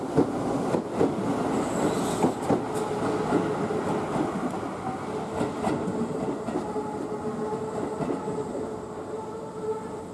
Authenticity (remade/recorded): recorded